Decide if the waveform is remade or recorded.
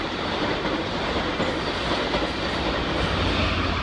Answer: recorded